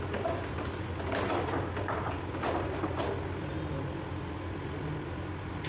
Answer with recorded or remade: recorded